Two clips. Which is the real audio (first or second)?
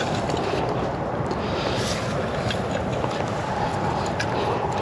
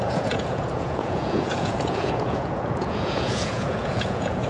first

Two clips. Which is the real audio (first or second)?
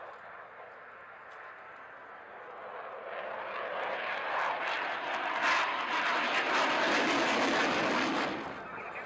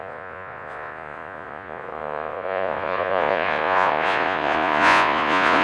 first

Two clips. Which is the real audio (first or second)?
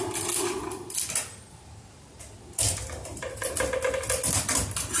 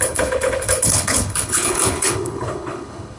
first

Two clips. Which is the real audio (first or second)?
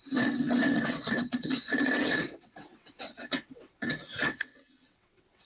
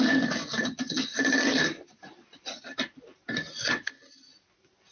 second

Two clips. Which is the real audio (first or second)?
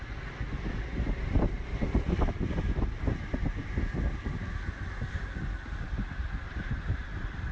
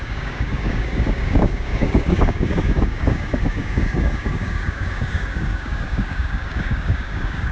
first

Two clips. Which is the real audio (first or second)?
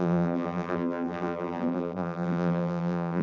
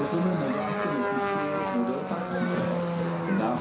second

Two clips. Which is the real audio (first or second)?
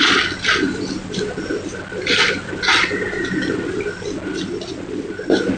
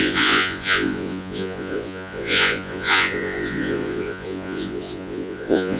first